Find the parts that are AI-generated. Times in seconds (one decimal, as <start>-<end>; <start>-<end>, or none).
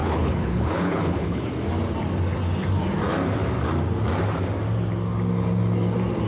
0.0-1.5